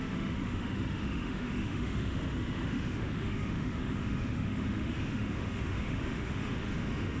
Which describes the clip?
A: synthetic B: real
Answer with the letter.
A